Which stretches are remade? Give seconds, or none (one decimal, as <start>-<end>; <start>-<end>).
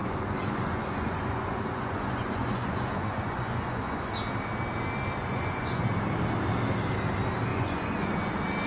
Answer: 0.0-4.1; 5.2-5.9; 7.5-8.1